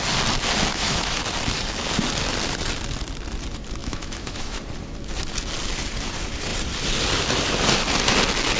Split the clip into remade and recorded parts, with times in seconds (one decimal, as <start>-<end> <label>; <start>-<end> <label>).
0.0-0.7 recorded; 0.7-1.2 remade; 1.2-3.8 recorded; 3.8-4.6 remade; 4.6-8.6 recorded